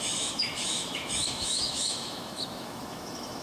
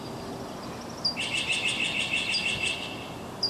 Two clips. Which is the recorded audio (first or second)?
second